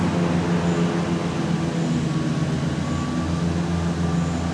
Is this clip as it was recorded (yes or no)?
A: yes